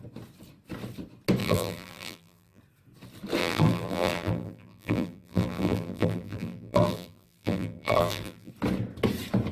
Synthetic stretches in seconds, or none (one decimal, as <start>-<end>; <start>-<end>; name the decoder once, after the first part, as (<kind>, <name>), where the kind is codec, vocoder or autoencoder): 1.4-2.6 (vocoder, BigVGAN v2); 3.4-8.5